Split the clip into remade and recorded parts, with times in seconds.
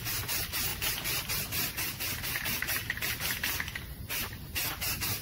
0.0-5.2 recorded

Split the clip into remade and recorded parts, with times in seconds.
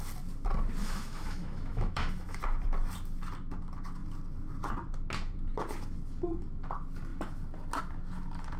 0.0-0.8 recorded; 0.8-2.4 remade; 2.4-8.6 recorded